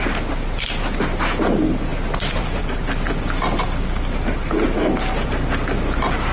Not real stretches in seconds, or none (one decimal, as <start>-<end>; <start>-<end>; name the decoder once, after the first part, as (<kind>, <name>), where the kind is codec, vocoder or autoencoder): none